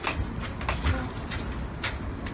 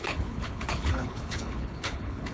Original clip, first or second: first